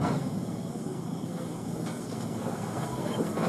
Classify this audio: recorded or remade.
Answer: remade